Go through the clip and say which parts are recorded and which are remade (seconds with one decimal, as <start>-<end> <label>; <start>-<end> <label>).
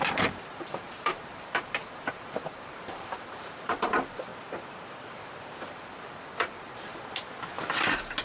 0.0-4.3 remade; 4.3-5.1 recorded; 5.1-6.9 remade; 6.9-8.2 recorded